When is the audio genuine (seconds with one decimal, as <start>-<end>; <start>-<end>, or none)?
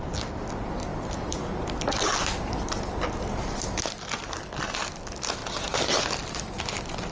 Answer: 0.0-5.4; 6.1-7.1